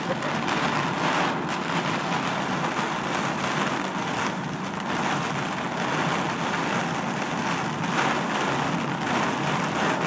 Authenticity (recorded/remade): recorded